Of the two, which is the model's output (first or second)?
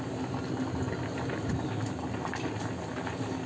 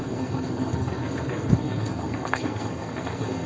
second